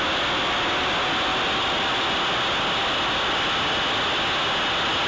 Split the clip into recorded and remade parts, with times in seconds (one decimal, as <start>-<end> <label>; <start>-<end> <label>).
0.0-5.1 recorded